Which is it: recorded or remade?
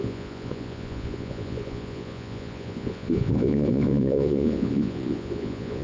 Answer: remade